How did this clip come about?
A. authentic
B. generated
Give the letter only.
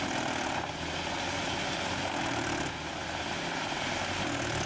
A